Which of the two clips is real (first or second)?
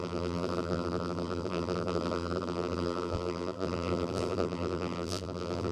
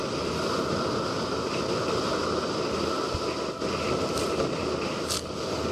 second